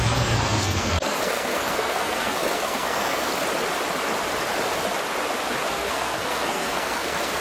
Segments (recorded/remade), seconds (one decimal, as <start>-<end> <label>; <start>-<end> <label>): 0.0-3.3 remade; 3.3-5.7 recorded; 5.7-7.4 remade